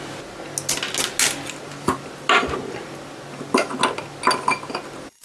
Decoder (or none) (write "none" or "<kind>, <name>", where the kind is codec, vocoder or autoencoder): none